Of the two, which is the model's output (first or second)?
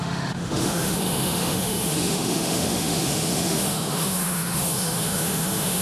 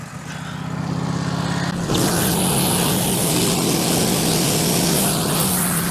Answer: first